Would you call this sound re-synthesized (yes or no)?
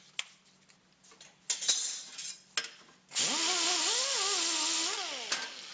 no